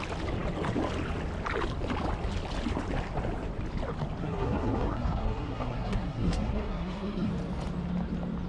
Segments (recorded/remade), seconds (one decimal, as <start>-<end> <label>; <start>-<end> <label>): 0.0-4.2 recorded; 4.2-7.3 remade; 7.3-8.5 recorded